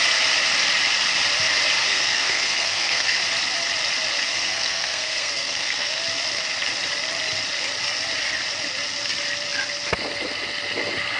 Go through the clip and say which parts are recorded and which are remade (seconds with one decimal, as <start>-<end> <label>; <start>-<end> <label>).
0.0-1.8 recorded; 1.8-3.2 remade; 3.2-4.3 recorded; 4.3-6.0 remade; 6.0-11.2 recorded